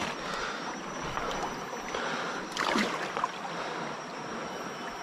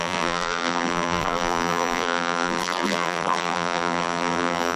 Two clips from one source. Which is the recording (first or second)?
first